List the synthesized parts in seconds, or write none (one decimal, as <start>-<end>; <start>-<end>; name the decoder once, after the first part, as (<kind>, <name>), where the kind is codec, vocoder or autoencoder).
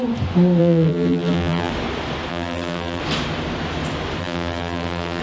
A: 0.6-1.7 (vocoder, BigVGAN v2); 2.3-3.0; 4.2-5.2